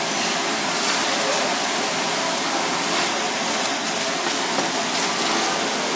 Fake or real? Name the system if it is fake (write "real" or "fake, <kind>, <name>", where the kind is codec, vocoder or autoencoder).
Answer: real